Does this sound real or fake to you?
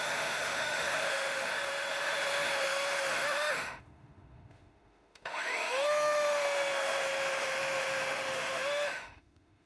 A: fake